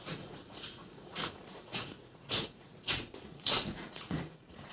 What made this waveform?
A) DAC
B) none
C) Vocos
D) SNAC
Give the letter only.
C